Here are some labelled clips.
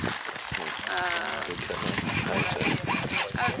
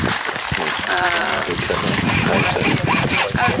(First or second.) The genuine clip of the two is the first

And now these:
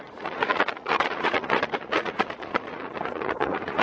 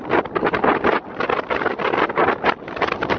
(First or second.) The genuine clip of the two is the second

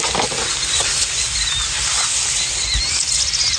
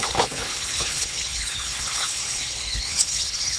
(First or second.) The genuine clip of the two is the first